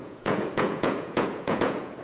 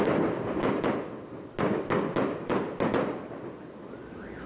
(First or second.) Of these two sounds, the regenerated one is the first